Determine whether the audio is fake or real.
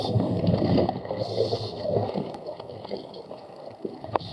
fake